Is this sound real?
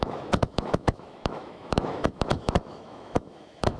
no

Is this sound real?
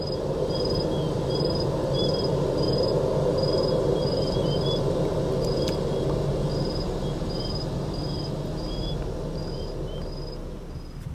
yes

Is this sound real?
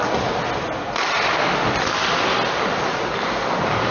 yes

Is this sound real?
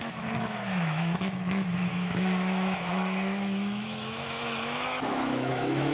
no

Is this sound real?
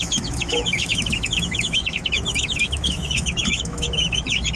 no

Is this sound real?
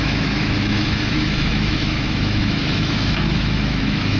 no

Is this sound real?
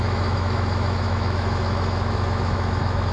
no